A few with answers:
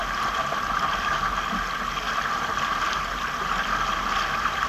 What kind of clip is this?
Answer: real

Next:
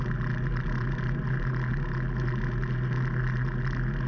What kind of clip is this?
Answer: real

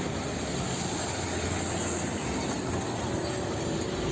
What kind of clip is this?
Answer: real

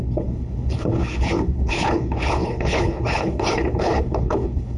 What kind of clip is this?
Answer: fake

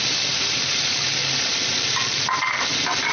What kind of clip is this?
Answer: real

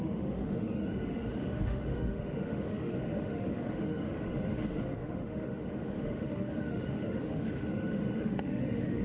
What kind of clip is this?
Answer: fake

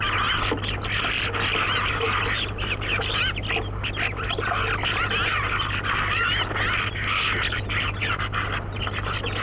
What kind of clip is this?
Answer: real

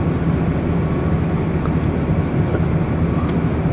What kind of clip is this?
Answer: real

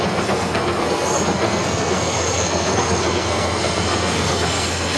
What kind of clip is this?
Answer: fake